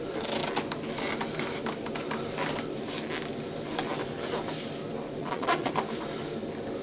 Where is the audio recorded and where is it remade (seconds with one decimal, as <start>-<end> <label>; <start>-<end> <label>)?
0.0-5.2 recorded; 5.2-5.7 remade; 5.7-6.8 recorded